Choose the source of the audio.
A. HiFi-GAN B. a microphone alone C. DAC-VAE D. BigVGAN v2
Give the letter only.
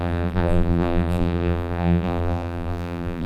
D